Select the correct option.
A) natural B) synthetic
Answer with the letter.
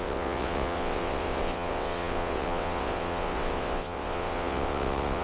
B